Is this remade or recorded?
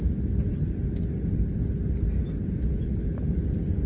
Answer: recorded